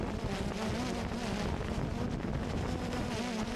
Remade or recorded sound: recorded